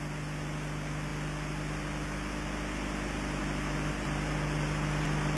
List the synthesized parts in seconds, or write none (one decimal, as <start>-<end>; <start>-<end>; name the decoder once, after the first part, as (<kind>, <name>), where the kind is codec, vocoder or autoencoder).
none

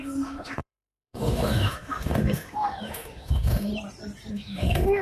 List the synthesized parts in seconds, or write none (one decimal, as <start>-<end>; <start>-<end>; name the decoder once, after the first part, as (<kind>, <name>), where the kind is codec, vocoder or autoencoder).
0.0-3.7 (autoencoder, DAC-VAE); 4.3-5.0

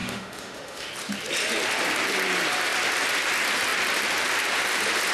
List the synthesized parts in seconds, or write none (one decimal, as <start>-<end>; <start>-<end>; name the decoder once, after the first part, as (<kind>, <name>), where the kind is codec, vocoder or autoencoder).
0.0-0.9 (autoencoder, DAC-VAE)

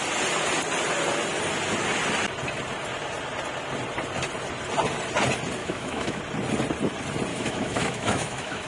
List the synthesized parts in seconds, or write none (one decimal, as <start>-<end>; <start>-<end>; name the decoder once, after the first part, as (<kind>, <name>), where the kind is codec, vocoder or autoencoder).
5.6-6.2 (autoencoder, DAC-VAE); 7.3-8.7

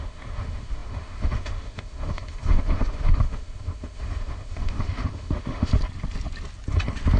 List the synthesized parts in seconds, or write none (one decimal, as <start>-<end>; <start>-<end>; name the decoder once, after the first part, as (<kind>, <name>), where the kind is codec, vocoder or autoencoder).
0.0-5.7 (autoencoder, DAC-VAE)

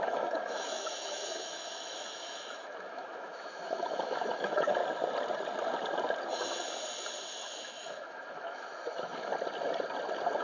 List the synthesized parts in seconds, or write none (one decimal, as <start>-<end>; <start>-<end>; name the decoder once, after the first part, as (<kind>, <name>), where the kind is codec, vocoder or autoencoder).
0.0-4.8 (autoencoder, DAC-VAE); 7.3-9.3

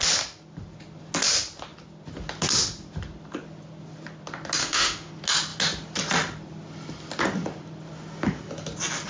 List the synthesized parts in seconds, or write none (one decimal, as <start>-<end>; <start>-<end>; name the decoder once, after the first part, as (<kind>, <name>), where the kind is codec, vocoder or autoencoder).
4.6-5.1 (autoencoder, DAC-VAE)